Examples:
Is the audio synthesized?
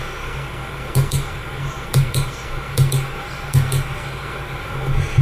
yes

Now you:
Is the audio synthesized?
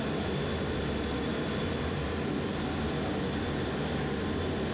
no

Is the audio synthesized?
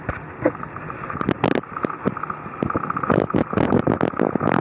no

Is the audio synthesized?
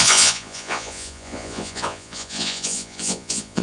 yes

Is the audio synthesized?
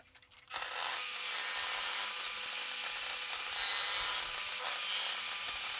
no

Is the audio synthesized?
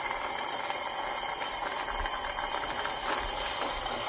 no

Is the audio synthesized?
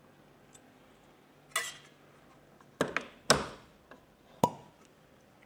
no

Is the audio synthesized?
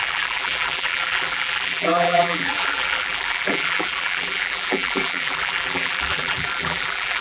yes